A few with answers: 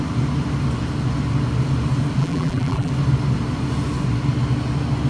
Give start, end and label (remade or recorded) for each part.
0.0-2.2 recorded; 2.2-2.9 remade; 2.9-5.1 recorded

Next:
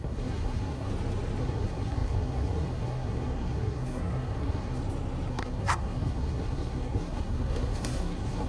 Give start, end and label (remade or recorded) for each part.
0.0-0.9 remade; 0.9-1.4 recorded; 1.4-4.8 remade; 4.8-5.3 recorded; 5.3-8.5 remade